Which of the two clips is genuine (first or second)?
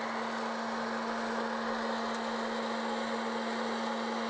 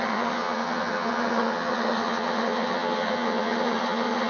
first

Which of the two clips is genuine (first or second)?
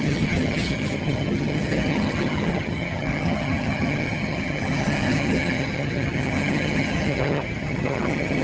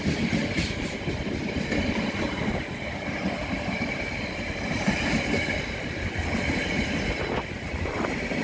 second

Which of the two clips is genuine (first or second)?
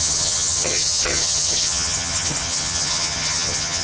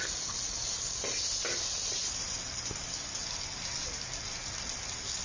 second